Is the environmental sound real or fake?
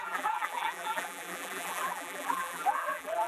fake